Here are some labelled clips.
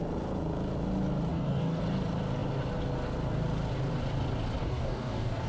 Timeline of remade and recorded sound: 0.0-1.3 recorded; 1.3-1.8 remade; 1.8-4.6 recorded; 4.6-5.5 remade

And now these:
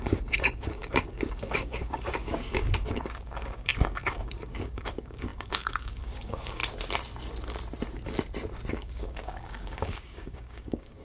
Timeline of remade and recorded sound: 0.0-6.6 remade; 6.6-8.7 recorded; 8.7-11.0 remade

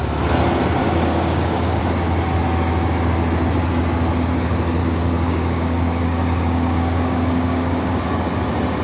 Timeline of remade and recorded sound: 0.0-0.8 recorded; 0.8-1.8 remade; 1.8-4.8 recorded; 4.8-8.0 remade; 8.0-8.8 recorded